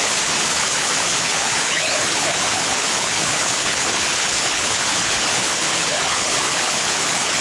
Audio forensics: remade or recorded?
remade